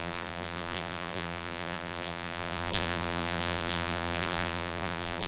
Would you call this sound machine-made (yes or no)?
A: yes